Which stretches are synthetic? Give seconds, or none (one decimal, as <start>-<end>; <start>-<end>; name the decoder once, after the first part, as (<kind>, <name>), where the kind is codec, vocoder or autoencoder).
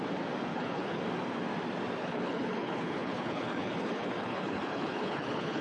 0.5-1.0 (codec, HILCodec); 2.0-5.6